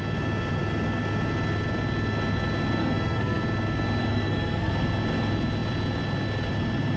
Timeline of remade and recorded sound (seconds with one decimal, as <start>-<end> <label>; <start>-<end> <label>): 0.0-2.8 recorded; 2.8-3.4 remade; 3.4-4.1 recorded; 4.1-4.7 remade; 4.7-7.0 recorded

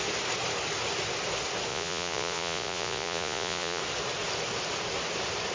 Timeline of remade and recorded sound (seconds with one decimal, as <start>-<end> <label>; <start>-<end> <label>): 0.0-1.7 recorded; 1.7-3.8 remade; 3.8-5.5 recorded

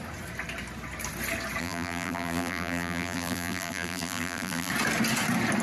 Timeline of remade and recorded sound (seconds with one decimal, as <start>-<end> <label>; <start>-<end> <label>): 0.0-1.6 recorded; 1.6-4.7 remade; 4.7-5.6 recorded

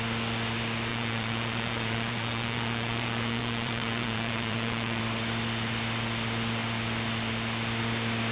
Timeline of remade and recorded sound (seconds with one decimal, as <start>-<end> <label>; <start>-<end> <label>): 0.0-0.9 recorded; 0.9-5.0 remade; 5.0-8.3 recorded

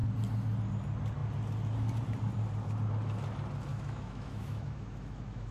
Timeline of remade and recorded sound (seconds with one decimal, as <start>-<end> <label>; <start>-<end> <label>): 0.0-3.7 recorded; 3.7-5.5 remade

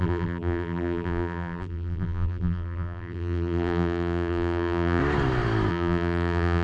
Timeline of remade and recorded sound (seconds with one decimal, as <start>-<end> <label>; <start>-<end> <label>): 0.0-5.0 remade; 5.0-5.7 recorded; 5.7-6.6 remade

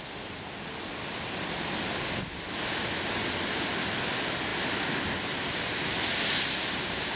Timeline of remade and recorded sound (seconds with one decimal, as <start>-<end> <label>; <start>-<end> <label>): 0.0-7.2 recorded